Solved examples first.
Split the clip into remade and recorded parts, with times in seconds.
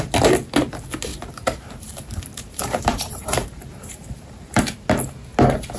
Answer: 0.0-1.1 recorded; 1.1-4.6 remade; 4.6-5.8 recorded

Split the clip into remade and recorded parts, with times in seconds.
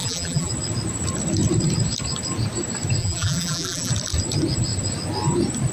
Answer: 0.0-0.5 remade; 0.5-3.0 recorded; 3.0-3.9 remade; 3.9-5.7 recorded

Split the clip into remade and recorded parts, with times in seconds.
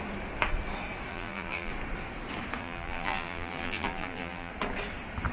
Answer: 0.0-1.1 recorded; 1.1-1.7 remade; 1.7-2.6 recorded; 2.6-4.5 remade; 4.5-5.3 recorded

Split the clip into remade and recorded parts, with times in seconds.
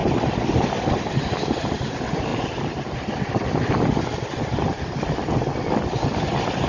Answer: 0.0-2.3 recorded; 2.3-5.3 remade; 5.3-6.7 recorded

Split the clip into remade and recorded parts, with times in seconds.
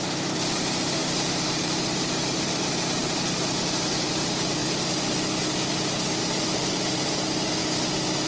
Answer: 0.0-4.6 remade; 4.6-6.2 recorded; 6.2-7.6 remade; 7.6-8.3 recorded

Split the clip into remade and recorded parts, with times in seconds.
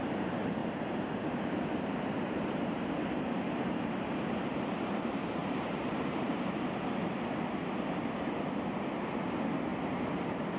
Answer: 0.0-0.6 recorded; 0.6-4.4 remade; 4.4-5.4 recorded; 5.4-6.4 remade; 6.4-10.6 recorded